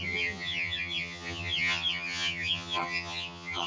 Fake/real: fake